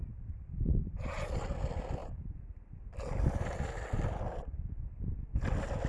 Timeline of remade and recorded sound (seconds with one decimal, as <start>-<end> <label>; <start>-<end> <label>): 0.0-5.9 recorded